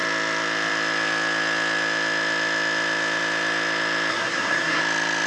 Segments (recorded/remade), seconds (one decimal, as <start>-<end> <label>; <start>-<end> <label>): 0.0-4.1 recorded; 4.1-4.8 remade; 4.8-5.3 recorded